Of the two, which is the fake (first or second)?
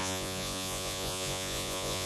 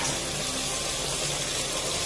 first